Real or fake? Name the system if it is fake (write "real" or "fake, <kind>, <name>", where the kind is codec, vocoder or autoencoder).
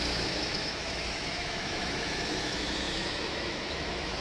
fake, autoencoder, DAC-VAE